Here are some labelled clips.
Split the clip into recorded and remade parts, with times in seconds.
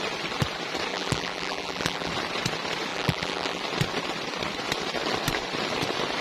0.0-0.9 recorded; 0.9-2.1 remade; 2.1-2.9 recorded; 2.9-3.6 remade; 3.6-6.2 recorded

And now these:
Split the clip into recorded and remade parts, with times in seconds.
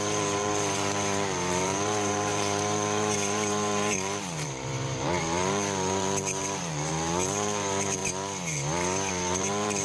0.0-8.0 remade; 8.0-9.1 recorded; 9.1-9.8 remade